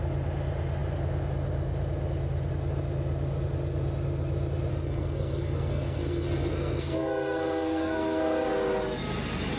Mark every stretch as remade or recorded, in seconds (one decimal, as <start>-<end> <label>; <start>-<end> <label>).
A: 0.0-4.7 recorded; 4.7-8.5 remade; 8.5-9.6 recorded